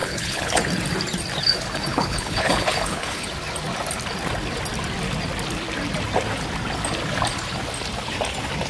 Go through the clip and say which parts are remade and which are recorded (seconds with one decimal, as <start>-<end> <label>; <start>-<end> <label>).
0.0-0.6 remade; 0.6-1.9 recorded; 1.9-3.3 remade; 3.3-8.7 recorded